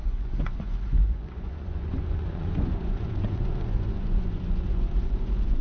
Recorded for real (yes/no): no